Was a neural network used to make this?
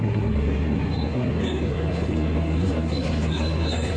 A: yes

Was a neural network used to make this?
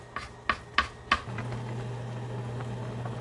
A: no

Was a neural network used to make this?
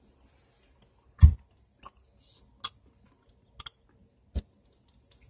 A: no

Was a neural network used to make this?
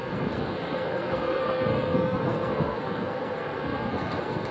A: yes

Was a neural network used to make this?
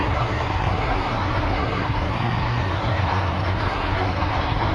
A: yes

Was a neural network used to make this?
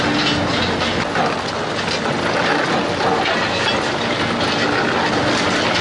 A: no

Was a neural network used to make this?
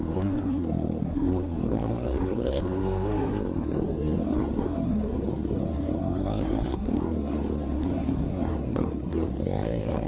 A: yes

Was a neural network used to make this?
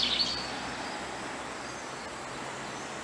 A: no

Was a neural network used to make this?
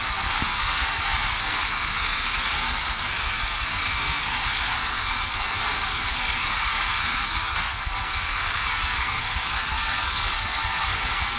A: yes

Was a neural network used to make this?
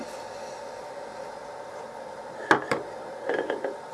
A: no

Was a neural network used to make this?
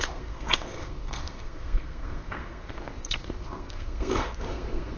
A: yes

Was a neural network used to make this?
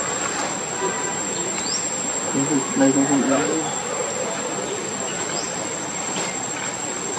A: no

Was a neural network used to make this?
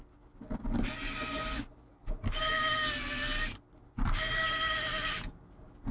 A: no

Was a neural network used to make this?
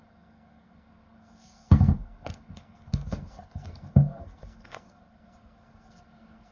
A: yes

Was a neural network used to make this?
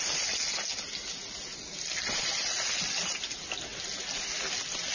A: no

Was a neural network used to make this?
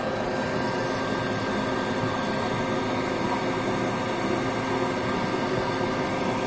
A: no